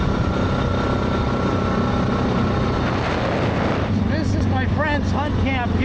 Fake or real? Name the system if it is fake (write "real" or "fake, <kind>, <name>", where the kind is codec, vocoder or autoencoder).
real